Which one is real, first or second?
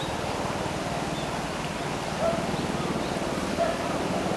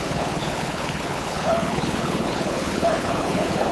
first